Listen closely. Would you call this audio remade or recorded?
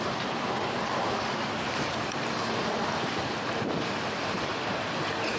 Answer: remade